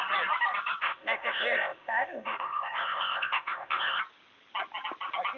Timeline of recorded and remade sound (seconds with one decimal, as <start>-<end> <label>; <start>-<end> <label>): 0.0-0.8 recorded; 0.8-4.0 remade; 4.0-5.4 recorded